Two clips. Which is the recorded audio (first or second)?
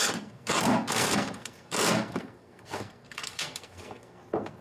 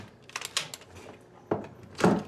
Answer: second